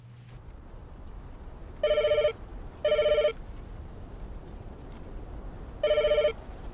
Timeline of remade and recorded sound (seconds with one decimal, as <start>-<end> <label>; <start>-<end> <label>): 0.0-0.8 recorded; 0.8-1.6 remade; 1.6-6.7 recorded